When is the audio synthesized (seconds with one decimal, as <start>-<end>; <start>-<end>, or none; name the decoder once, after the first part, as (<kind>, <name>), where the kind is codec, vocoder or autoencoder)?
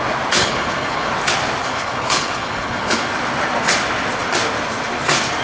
0.4-1.1 (codec, HILCodec); 1.6-3.1